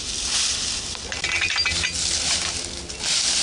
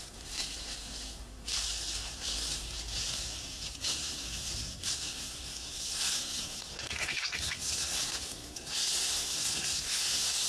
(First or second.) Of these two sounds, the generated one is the second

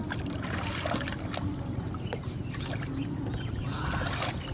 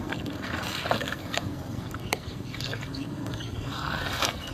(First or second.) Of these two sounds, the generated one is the second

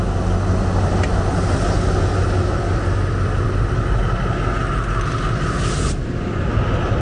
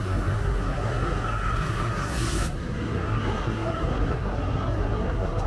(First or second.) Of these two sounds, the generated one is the second